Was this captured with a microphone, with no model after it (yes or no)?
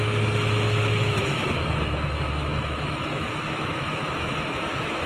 no